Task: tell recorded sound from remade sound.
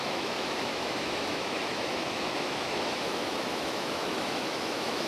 remade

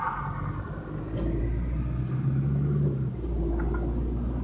recorded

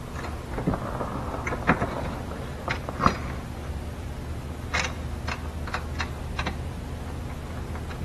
recorded